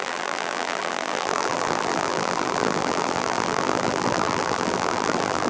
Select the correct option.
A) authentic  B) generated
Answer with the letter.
B